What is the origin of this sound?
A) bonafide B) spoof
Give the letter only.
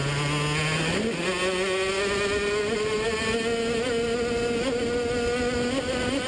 A